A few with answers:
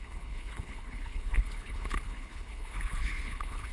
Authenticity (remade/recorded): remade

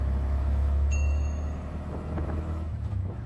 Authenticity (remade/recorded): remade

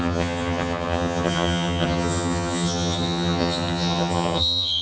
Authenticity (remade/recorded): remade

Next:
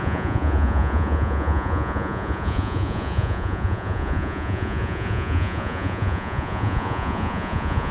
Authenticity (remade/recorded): remade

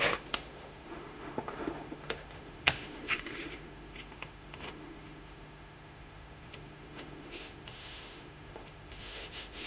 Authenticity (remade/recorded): remade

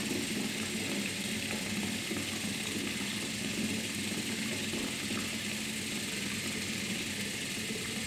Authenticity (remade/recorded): recorded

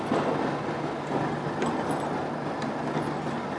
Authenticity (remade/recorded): recorded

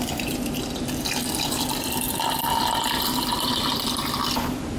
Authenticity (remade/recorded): remade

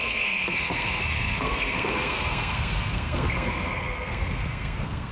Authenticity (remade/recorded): remade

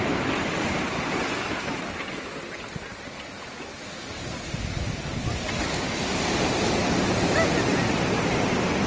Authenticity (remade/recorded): recorded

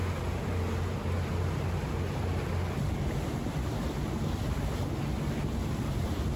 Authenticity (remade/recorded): recorded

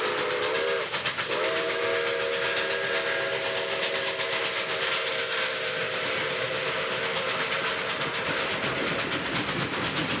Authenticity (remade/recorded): recorded